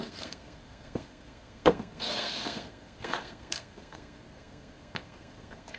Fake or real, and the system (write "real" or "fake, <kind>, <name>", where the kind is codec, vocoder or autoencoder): fake, codec, SNAC